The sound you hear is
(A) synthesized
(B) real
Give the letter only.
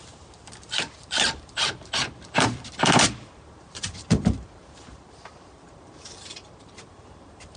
A